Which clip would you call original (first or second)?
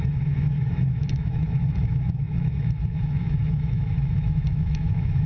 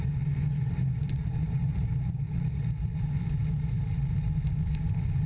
second